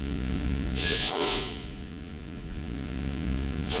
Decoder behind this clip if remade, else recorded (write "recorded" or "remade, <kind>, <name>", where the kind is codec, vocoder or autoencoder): remade, vocoder, Vocos